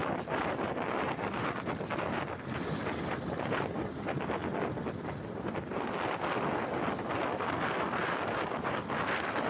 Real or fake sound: real